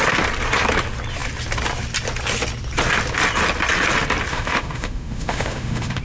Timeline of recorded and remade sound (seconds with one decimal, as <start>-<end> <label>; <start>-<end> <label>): 0.0-4.3 recorded; 4.3-6.0 remade